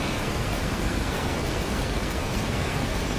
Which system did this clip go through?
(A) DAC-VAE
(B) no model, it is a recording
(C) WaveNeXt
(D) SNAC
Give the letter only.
D